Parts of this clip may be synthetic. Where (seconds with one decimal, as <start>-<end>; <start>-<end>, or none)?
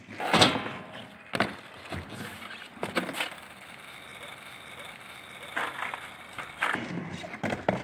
none